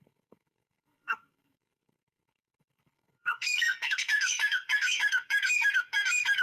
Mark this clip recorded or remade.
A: remade